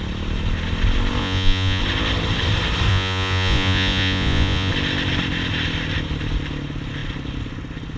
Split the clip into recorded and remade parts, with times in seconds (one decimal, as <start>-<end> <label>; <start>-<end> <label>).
0.0-1.2 recorded; 1.2-1.8 remade; 1.8-2.9 recorded; 2.9-4.7 remade; 4.7-8.0 recorded